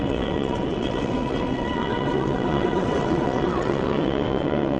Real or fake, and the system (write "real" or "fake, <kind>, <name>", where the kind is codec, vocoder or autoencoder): fake, vocoder, WaveNeXt